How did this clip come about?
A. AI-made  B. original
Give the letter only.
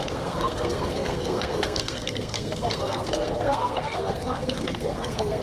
A